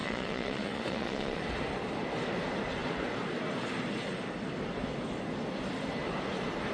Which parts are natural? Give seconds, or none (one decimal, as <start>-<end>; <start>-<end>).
1.4-6.7